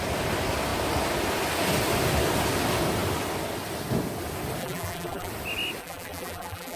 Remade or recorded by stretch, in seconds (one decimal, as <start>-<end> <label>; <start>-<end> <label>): 0.0-4.6 recorded; 4.6-5.3 remade; 5.3-5.8 recorded; 5.8-6.8 remade